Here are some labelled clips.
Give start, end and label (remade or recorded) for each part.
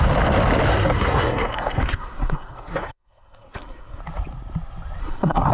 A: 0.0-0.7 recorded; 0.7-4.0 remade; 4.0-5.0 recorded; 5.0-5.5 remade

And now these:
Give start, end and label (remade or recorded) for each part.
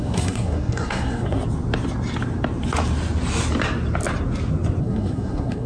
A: 0.0-1.4 remade; 1.4-4.8 recorded; 4.8-5.7 remade